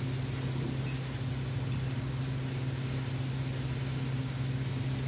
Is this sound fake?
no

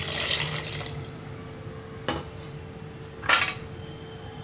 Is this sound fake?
no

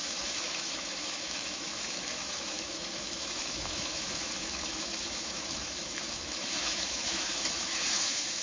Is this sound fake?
yes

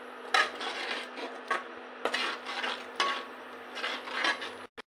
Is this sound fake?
no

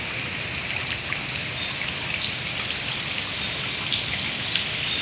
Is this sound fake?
no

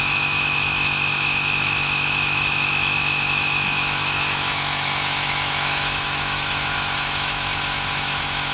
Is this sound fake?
yes